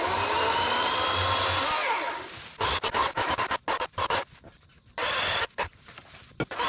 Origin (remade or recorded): recorded